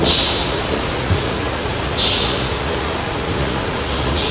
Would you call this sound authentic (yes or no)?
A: no